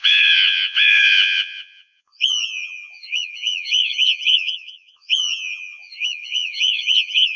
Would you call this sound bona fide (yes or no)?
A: no